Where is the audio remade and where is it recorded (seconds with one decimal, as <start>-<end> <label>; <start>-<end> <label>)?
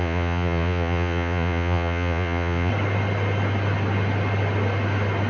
0.0-2.7 remade; 2.7-5.3 recorded